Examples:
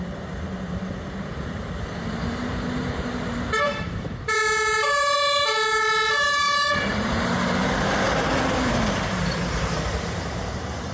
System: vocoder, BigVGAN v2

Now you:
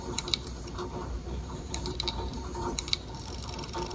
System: vocoder, BigVGAN v2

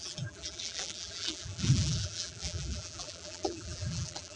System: vocoder, BigVGAN v2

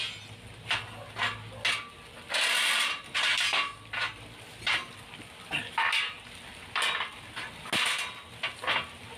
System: none